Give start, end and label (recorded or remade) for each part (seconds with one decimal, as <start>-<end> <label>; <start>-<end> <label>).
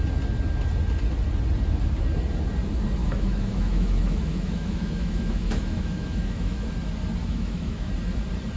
0.0-3.0 recorded; 3.0-6.7 remade; 6.7-7.2 recorded; 7.2-7.9 remade; 7.9-8.6 recorded